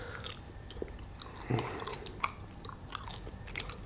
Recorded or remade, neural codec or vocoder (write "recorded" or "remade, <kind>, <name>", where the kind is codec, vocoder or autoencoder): recorded